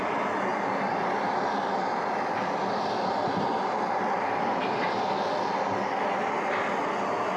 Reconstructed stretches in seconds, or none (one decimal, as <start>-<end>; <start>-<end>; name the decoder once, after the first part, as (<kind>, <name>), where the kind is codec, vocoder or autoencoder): 0.5-4.9 (vocoder, BigVGAN v2)